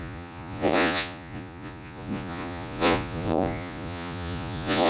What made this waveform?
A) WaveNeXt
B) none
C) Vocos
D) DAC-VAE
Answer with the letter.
C